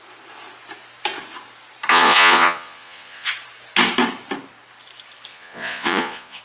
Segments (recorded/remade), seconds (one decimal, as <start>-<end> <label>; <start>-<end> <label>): 0.0-1.9 recorded; 1.9-3.3 remade; 3.3-5.3 recorded; 5.3-6.4 remade